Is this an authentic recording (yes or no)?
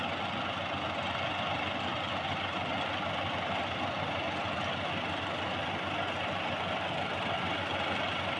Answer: yes